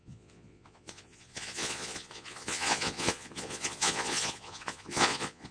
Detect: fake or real fake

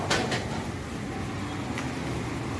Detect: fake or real real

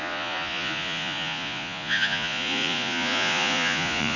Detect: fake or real fake